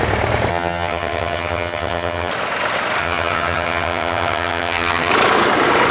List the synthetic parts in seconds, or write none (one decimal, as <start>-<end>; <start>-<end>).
0.5-2.3; 3.0-5.1

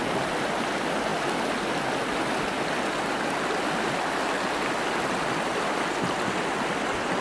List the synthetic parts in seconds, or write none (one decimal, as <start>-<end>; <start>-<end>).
none